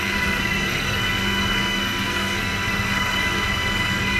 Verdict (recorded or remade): remade